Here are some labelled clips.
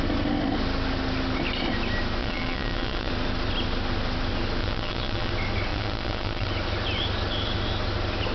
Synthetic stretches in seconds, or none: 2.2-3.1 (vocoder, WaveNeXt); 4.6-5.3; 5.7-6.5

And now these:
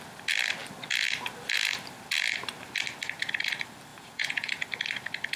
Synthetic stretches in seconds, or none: 3.9-4.5 (vocoder, Vocos)

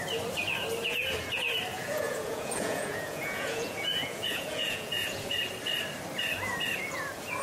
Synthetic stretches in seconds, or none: 1.7-5.4 (vocoder, Vocos)

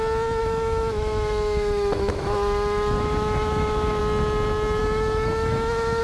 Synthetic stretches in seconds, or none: 0.4-4.0 (autoencoder, DAC-VAE); 4.8-6.0

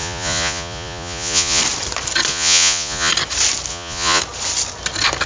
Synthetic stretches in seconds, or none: 0.0-1.6 (vocoder, Vocos); 2.3-3.1; 3.7-4.2

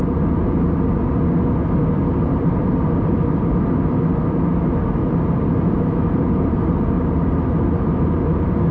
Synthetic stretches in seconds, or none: 2.3-3.1 (vocoder, BigVGAN v2); 5.0-6.7

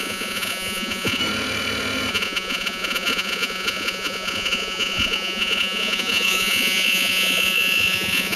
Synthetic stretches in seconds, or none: 0.0-1.2 (vocoder, Vocos); 2.1-8.4

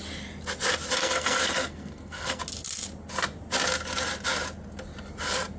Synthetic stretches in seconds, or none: 1.0-2.4 (codec, SNAC)